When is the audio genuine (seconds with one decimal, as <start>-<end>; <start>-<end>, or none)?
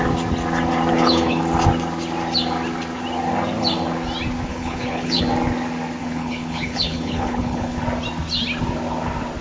0.0-0.9; 1.4-4.5; 5.2-6.0; 7.8-9.4